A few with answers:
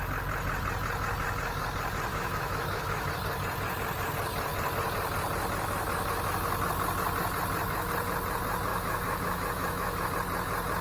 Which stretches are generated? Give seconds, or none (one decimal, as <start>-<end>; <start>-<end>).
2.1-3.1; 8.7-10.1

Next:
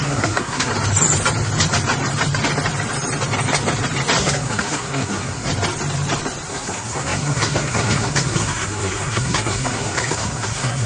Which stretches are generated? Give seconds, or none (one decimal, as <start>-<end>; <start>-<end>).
0.0-0.7; 4.2-5.5; 6.5-10.9

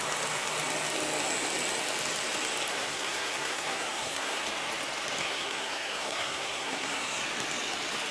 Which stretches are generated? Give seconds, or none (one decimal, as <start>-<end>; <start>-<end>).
2.7-4.5; 5.2-7.2